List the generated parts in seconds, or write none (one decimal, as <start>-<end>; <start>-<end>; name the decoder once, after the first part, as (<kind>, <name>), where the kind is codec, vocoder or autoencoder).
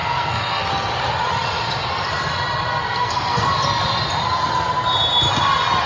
0.0-0.6 (codec, SNAC); 2.7-3.4